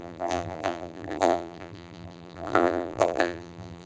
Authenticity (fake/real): fake